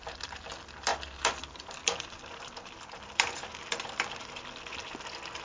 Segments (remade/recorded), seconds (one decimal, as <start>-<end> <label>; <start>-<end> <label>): 0.0-0.9 recorded; 0.9-4.1 remade; 4.1-5.4 recorded